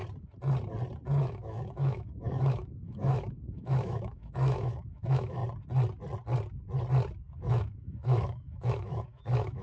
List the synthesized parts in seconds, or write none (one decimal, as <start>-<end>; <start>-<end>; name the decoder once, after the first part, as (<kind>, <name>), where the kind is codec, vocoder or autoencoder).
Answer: 1.2-5.4 (autoencoder, DAC-VAE); 7.5-9.6